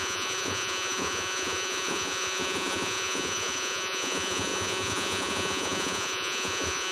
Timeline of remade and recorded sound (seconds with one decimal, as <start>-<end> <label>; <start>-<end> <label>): 0.0-6.9 remade